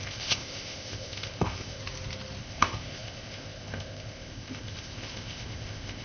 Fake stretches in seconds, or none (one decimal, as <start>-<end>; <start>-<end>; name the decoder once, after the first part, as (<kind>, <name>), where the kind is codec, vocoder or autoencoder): 0.0-1.8 (codec, ZipCodec); 2.4-6.0